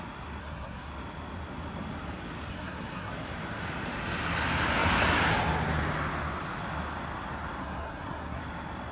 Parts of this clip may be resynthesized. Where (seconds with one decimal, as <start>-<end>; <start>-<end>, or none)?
0.4-0.9; 2.5-3.1; 7.6-8.4